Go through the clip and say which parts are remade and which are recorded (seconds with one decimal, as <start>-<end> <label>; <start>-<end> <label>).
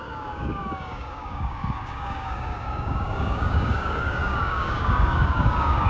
0.0-5.9 remade